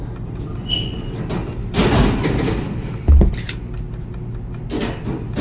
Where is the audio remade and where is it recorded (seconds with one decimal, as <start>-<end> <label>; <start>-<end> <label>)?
0.0-5.4 recorded

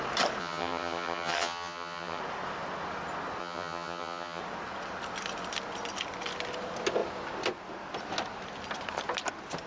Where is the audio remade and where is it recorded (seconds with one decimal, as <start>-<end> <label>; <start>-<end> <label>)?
0.0-0.4 recorded; 0.4-2.2 remade; 2.2-3.4 recorded; 3.4-4.4 remade; 4.4-9.7 recorded

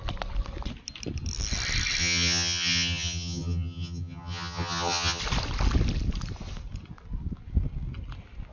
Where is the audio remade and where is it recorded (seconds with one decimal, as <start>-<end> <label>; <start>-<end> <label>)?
0.0-2.0 recorded; 2.0-5.2 remade; 5.2-8.5 recorded

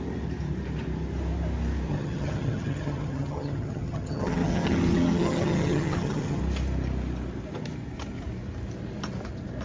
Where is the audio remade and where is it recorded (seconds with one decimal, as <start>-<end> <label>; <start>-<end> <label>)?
0.0-1.9 recorded; 1.9-6.4 remade; 6.4-9.6 recorded

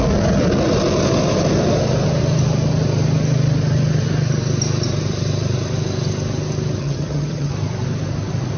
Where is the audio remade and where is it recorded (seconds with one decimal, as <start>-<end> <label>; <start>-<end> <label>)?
0.0-6.8 recorded; 6.8-7.5 remade; 7.5-8.6 recorded

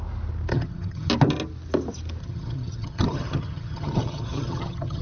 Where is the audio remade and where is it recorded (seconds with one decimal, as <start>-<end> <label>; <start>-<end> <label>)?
0.0-0.5 recorded; 0.5-1.1 remade; 1.1-2.2 recorded; 2.2-5.0 remade

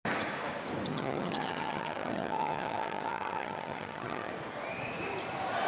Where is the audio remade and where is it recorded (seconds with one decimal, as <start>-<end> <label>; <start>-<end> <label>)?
0.0-0.9 recorded; 0.9-4.3 remade; 4.3-5.7 recorded

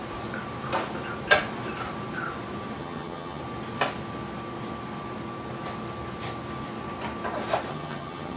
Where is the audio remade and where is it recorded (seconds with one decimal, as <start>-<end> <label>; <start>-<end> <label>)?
0.0-2.8 recorded; 2.8-3.4 remade; 3.4-7.7 recorded; 7.7-8.4 remade